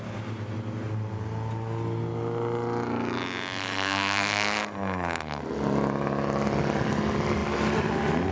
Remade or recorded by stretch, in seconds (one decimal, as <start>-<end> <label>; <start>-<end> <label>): 0.0-3.6 recorded; 3.6-5.4 remade; 5.4-8.3 recorded